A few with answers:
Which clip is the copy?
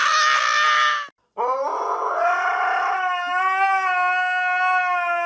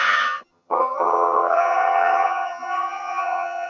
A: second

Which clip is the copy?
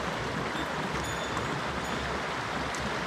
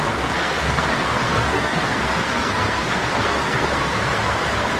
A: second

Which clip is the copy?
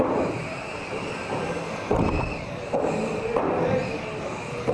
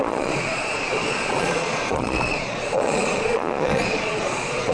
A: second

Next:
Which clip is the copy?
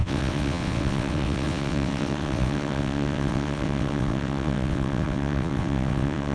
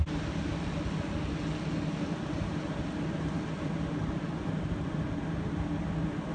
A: first